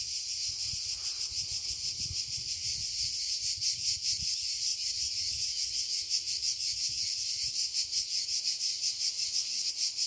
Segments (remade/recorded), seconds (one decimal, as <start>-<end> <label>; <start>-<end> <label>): 0.0-4.7 recorded; 4.7-9.7 remade; 9.7-10.1 recorded